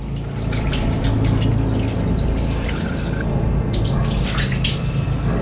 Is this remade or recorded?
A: recorded